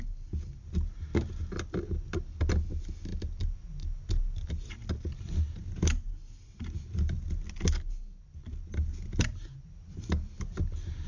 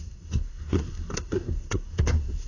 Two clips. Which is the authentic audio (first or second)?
first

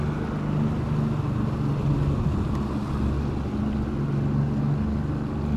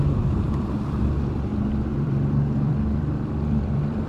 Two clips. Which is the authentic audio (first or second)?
first